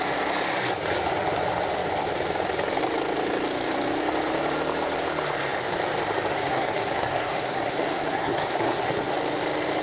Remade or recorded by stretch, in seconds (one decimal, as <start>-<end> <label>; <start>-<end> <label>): 0.0-6.3 recorded; 6.3-9.1 remade; 9.1-9.8 recorded